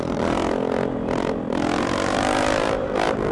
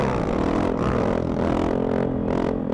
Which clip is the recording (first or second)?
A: second